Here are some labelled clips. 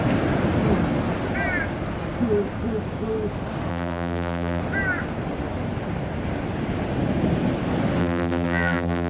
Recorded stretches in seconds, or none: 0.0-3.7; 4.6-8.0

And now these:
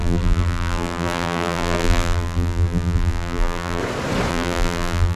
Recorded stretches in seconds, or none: 3.8-4.3

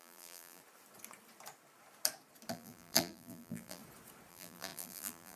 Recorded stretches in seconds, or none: 0.6-2.5; 3.8-4.3

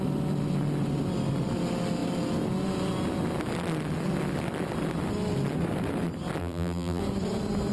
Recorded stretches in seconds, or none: 0.0-6.4; 7.0-7.7

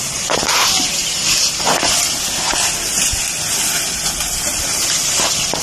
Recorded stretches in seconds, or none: 0.0-5.6

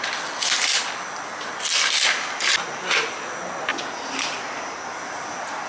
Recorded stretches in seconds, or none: 0.0-5.7